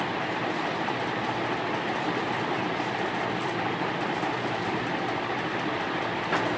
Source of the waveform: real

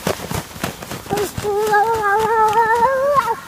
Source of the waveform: real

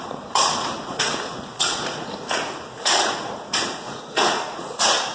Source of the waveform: fake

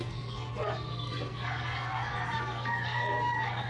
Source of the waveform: fake